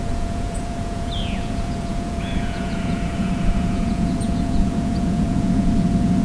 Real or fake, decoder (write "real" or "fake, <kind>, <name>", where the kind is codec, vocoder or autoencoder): fake, vocoder, Vocos